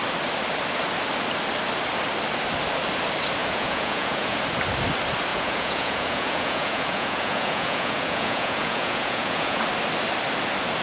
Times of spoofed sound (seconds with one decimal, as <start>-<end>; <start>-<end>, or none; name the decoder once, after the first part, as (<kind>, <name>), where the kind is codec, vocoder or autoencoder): 3.4-4.4 (vocoder, Vocos); 5.3-9.6